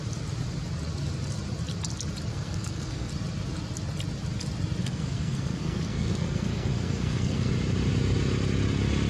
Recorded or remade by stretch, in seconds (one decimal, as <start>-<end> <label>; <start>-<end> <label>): 0.0-2.3 recorded; 2.3-3.1 remade; 3.1-4.8 recorded; 4.8-7.5 remade; 7.5-9.1 recorded